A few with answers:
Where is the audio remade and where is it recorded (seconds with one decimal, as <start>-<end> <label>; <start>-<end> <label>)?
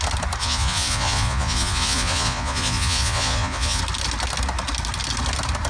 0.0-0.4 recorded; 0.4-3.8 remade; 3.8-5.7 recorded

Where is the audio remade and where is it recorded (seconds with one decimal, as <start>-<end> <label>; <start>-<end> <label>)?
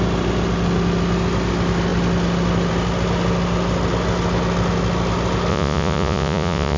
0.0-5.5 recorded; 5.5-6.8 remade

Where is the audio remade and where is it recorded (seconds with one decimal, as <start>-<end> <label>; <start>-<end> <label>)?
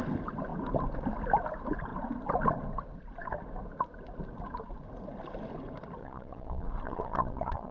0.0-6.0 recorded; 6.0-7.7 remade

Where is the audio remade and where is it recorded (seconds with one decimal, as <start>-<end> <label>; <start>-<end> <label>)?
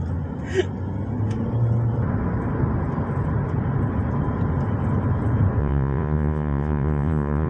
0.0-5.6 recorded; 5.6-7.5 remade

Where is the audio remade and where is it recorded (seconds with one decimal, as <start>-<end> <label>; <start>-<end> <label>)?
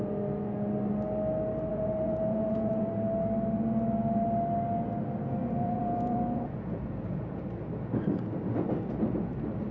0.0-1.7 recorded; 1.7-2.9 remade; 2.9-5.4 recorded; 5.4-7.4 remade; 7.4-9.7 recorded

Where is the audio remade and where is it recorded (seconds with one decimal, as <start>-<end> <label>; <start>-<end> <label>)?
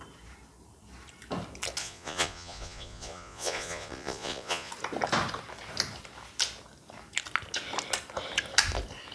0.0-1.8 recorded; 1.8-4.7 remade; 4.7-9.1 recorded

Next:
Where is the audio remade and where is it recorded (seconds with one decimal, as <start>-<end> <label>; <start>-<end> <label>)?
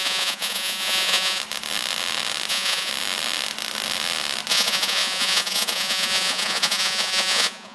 0.0-1.4 remade; 1.4-2.5 recorded; 2.5-2.9 remade; 2.9-4.5 recorded; 4.5-7.7 remade